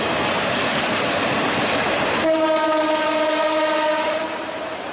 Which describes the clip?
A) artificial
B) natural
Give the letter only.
A